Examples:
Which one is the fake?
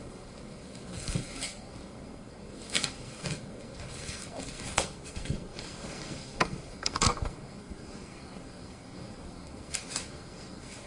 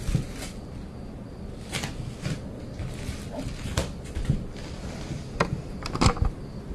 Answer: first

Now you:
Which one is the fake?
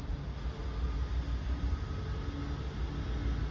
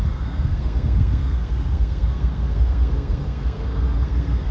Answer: second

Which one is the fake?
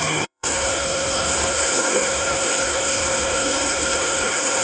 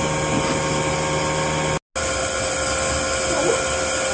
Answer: first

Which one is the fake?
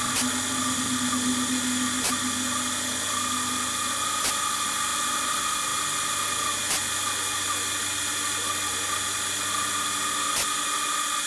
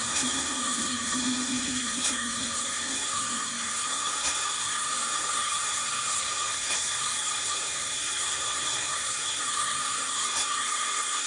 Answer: second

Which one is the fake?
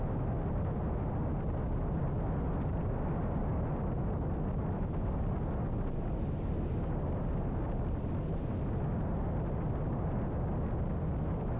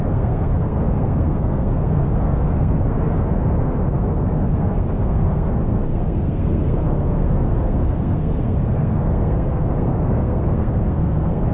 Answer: second